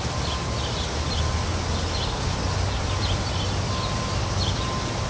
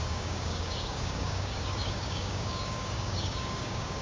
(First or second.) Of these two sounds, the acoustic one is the first